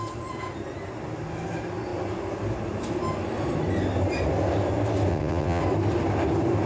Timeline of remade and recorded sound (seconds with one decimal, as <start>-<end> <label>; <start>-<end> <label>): 0.0-5.1 recorded; 5.1-5.6 remade; 5.6-6.7 recorded